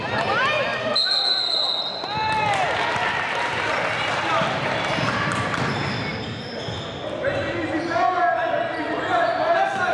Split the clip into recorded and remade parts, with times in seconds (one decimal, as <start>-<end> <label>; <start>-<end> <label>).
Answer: 0.0-9.9 recorded